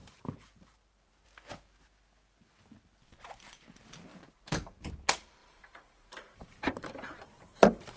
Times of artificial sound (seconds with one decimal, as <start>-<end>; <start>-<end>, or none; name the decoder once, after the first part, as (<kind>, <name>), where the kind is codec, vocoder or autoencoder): 0.0-1.1 (vocoder, BigVGAN v2); 4.1-4.9; 5.4-8.0